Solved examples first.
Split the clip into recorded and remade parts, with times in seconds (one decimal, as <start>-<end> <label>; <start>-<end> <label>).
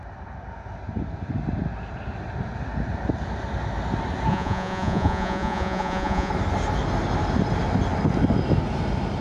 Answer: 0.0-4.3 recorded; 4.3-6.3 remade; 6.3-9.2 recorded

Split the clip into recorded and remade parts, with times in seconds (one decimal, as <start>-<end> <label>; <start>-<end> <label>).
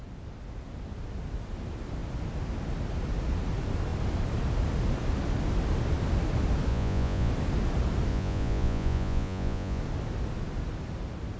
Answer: 0.0-6.7 recorded; 6.7-7.3 remade; 7.3-8.1 recorded; 8.1-9.8 remade; 9.8-11.4 recorded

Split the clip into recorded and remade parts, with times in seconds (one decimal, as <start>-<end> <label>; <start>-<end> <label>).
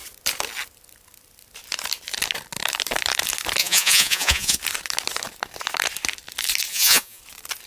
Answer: 0.0-3.6 recorded; 3.6-4.6 remade; 4.6-6.7 recorded; 6.7-7.2 remade; 7.2-7.7 recorded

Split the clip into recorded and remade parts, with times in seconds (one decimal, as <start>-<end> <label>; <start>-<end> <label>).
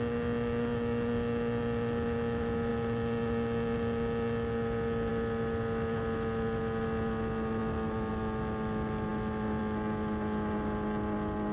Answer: 0.0-11.5 recorded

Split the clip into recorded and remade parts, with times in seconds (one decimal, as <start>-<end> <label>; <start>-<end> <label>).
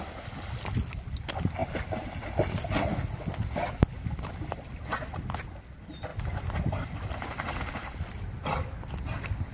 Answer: 0.0-9.5 recorded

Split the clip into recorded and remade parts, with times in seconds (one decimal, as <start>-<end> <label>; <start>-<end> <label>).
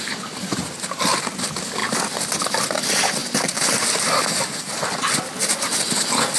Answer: 0.0-6.4 recorded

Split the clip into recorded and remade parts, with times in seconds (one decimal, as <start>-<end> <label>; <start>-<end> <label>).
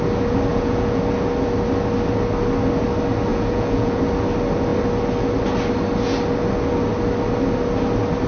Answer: 0.0-0.5 recorded; 0.5-1.0 remade; 1.0-3.3 recorded; 3.3-4.0 remade; 4.0-8.3 recorded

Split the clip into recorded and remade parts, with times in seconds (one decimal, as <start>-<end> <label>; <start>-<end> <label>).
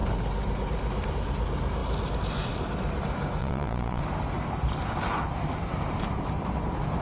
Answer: 0.0-3.4 recorded; 3.4-4.0 remade; 4.0-7.0 recorded